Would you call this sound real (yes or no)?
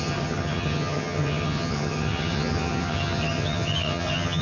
no